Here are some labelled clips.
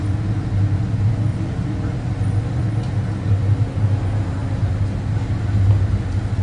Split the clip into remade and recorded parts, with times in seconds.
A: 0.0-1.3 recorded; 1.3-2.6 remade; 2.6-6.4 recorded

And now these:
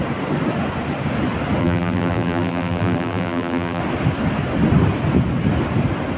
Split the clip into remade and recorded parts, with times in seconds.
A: 0.0-1.6 recorded; 1.6-3.8 remade; 3.8-6.2 recorded

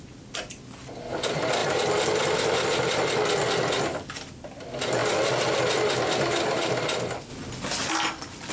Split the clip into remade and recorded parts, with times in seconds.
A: 0.0-1.6 recorded; 1.6-2.7 remade; 2.7-8.5 recorded

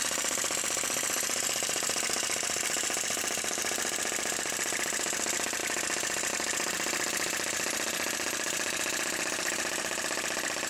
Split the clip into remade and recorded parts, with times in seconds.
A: 0.0-10.7 recorded

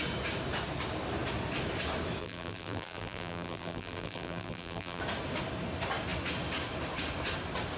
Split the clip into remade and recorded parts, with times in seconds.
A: 0.0-2.2 recorded; 2.2-5.0 remade; 5.0-7.8 recorded

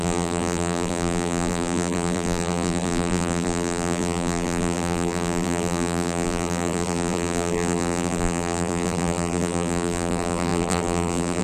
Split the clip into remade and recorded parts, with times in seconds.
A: 0.0-11.4 remade